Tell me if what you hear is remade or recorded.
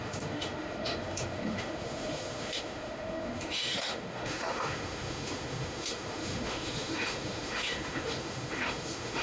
remade